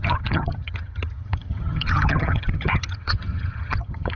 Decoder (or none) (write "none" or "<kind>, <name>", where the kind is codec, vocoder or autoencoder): vocoder, HiFi-GAN